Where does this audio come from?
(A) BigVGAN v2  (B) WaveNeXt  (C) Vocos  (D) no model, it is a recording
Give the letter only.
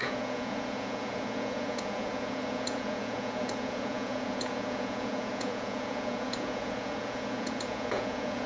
C